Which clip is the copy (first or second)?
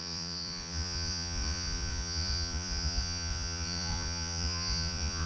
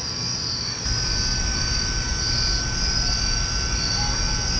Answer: first